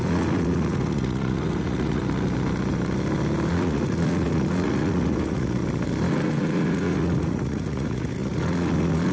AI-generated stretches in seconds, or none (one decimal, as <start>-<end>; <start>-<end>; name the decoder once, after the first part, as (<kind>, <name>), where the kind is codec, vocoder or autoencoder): 0.0-2.0 (vocoder, Vocos); 3.5-5.6; 6.1-9.1